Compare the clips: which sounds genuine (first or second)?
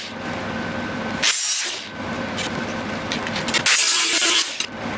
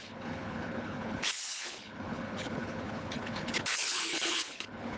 first